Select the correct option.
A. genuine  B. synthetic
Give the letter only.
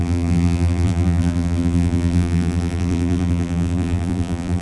B